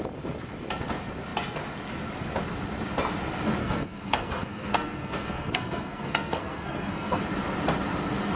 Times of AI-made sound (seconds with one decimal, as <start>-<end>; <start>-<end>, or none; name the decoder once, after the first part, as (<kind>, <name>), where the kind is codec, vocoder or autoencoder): 3.6-7.2 (codec, SNAC)